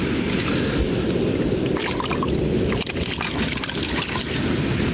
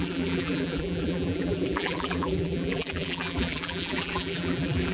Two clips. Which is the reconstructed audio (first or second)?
second